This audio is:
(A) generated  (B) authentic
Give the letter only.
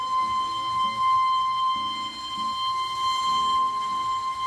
B